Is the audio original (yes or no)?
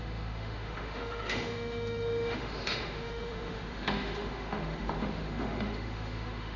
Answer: no